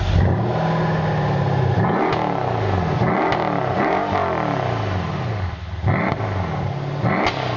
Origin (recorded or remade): recorded